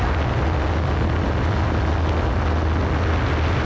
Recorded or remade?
recorded